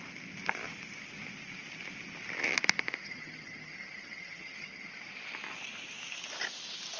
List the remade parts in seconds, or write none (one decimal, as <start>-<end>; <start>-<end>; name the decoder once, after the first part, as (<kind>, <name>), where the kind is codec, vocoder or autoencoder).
3.0-4.9 (vocoder, HiFi-GAN)